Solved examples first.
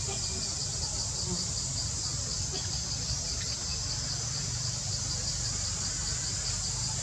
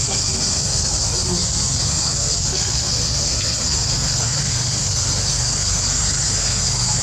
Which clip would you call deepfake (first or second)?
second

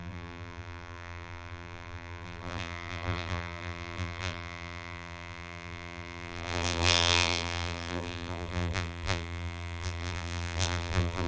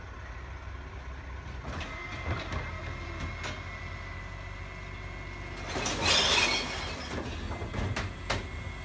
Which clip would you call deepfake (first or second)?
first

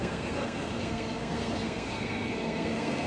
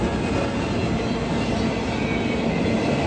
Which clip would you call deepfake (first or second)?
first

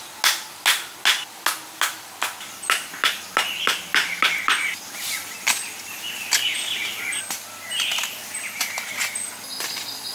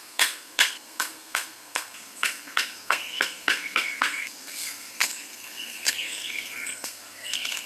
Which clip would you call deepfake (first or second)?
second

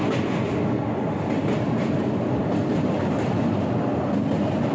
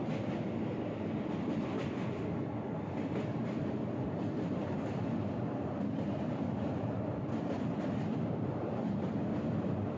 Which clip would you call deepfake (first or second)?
second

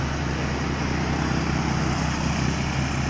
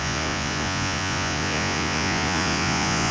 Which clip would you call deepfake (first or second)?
second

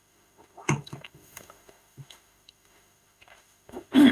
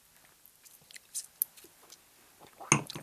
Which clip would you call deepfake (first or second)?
first